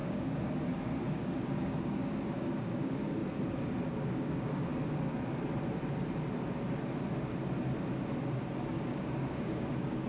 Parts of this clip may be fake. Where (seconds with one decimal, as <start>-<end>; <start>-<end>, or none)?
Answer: 0.0-3.2; 3.9-4.7; 8.7-10.1